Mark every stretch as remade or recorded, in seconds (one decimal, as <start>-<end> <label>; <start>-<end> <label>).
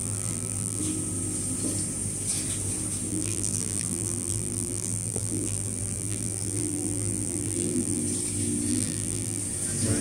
0.0-0.8 remade; 0.8-3.1 recorded; 3.1-8.0 remade; 8.0-8.7 recorded; 8.7-9.4 remade; 9.4-10.0 recorded